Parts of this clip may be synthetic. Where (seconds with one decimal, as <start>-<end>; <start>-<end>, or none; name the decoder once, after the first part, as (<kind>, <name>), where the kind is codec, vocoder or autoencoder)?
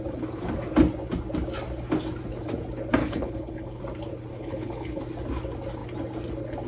3.0-3.8 (codec, HILCodec); 4.3-5.0